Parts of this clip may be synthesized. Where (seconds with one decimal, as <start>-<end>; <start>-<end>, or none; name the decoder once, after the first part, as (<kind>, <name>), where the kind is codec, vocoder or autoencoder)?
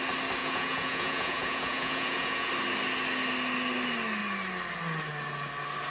0.4-2.5 (vocoder, Vocos)